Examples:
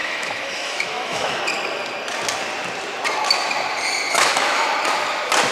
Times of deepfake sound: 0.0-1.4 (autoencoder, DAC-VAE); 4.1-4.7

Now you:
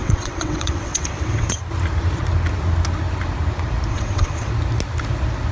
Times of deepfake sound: 0.0-1.6 (vocoder, WaveNeXt); 3.9-4.5

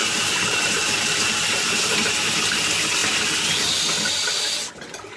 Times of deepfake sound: 0.0-2.4 (vocoder, BigVGAN v2)

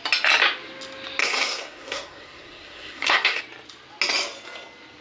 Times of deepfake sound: 1.2-3.4 (codec, SNAC)

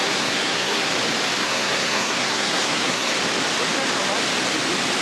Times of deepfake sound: 0.0-0.9 (codec, SNAC); 1.4-3.1

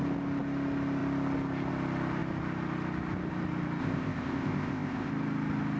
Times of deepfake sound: 3.8-5.1 (codec, ZipCodec)

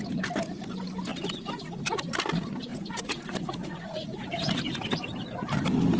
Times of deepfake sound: 1.1-2.0 (vocoder, Vocos); 2.7-4.3

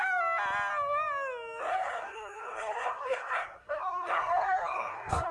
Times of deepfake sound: 1.7-5.3 (codec, SNAC)